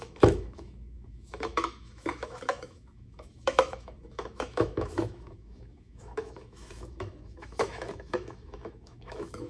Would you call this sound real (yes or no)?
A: no